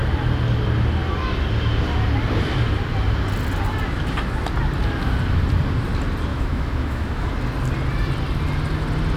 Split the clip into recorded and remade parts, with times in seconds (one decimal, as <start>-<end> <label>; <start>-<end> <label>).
0.0-6.3 recorded; 6.3-7.3 remade; 7.3-9.2 recorded